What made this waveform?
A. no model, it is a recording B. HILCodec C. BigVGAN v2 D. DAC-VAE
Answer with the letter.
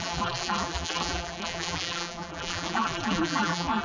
C